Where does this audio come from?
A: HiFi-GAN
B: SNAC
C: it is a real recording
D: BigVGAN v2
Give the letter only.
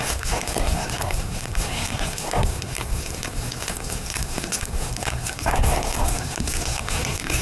B